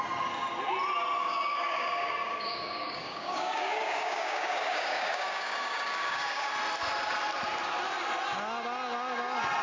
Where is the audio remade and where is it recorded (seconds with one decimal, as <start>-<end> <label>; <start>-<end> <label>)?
0.0-1.2 recorded; 1.2-6.5 remade; 6.5-9.6 recorded